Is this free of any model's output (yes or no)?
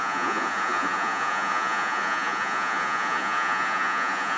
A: no